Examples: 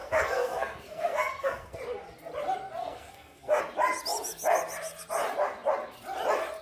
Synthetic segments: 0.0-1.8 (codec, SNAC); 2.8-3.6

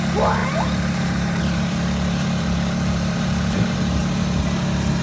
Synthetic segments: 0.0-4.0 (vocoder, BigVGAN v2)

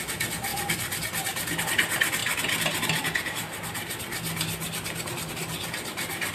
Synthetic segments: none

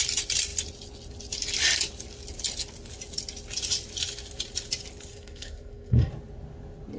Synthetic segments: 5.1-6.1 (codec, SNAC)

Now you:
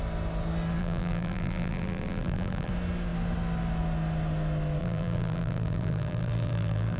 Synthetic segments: 0.8-2.7 (vocoder, BigVGAN v2); 4.8-7.0